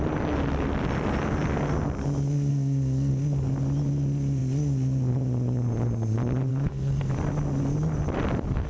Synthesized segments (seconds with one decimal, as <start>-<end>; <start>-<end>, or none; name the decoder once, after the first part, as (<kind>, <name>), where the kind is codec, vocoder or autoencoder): 2.5-3.1 (codec, SNAC); 6.5-7.1